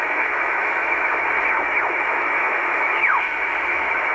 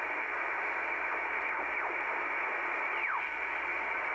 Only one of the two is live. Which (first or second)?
second